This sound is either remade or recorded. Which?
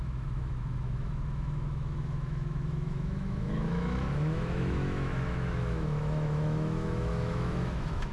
remade